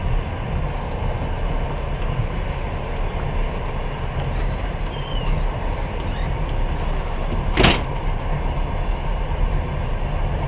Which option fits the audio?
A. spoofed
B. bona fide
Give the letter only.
B